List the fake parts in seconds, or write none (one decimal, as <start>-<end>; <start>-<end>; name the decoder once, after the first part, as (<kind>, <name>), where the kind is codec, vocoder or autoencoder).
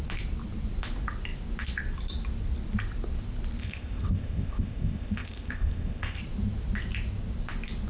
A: 3.6-6.2 (codec, ZipCodec)